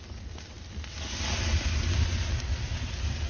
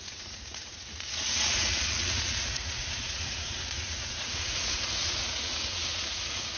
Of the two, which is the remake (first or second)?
second